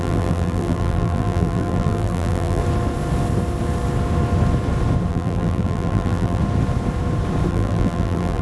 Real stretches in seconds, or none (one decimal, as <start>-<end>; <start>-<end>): 2.6-5.1; 6.4-7.5